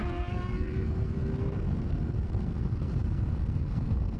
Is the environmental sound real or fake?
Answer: fake